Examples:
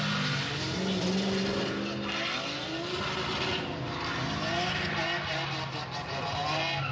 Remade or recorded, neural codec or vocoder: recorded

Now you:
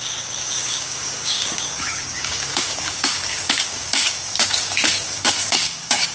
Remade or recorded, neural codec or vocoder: remade, codec, DAC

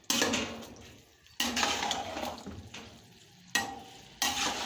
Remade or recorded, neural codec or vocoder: recorded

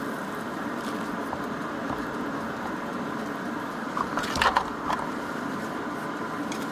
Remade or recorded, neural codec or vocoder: remade, vocoder, BigVGAN v2